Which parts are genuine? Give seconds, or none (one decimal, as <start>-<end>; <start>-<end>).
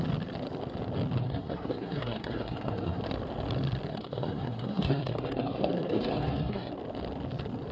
0.0-1.2; 3.0-3.9; 6.7-7.7